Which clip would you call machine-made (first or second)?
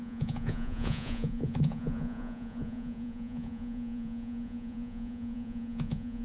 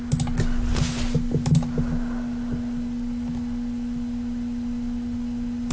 first